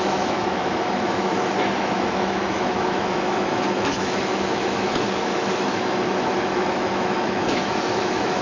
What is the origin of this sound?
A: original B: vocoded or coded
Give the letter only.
B